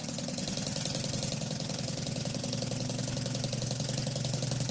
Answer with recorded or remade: recorded